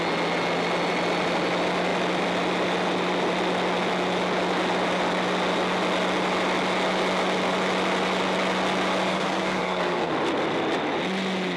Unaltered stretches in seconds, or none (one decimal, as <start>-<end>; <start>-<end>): 0.0-9.1; 10.1-11.6

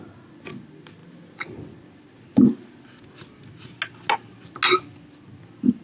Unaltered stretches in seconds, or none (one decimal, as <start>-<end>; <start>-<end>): 0.0-5.8

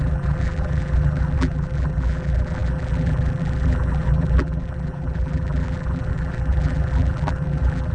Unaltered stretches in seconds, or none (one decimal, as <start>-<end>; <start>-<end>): none

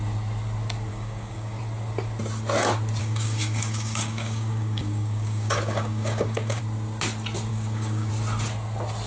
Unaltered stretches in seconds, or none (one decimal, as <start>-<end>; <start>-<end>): 0.0-0.9; 1.6-3.0; 6.6-7.5; 8.1-9.1

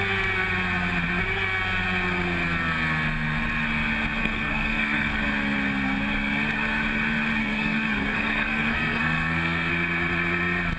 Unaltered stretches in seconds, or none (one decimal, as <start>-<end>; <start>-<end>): 0.0-4.2; 5.2-7.4; 9.7-10.8

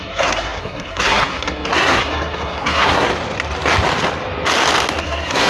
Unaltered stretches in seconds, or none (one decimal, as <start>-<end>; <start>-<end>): 3.1-5.0

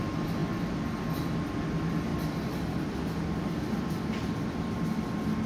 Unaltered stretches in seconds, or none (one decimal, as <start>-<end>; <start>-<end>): 0.0-5.5

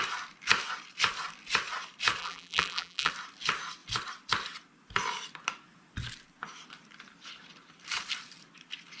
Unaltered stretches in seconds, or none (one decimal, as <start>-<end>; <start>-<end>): 0.0-2.2; 3.1-9.0